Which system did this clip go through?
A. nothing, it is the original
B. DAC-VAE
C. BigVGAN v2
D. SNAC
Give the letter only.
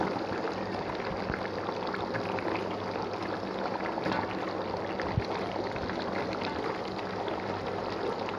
C